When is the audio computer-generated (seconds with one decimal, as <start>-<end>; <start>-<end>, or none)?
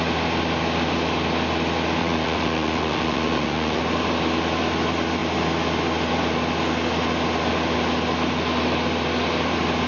2.0-3.8